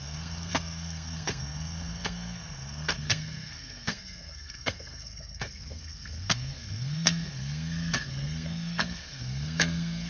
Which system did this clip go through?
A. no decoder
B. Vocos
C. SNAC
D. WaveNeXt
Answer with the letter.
C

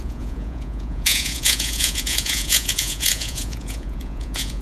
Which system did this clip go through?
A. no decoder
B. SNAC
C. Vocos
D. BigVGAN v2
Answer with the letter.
C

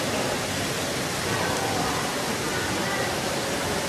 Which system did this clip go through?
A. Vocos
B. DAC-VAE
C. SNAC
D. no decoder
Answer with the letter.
D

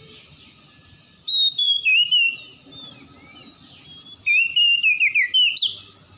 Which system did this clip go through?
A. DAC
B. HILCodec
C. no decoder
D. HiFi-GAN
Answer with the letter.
C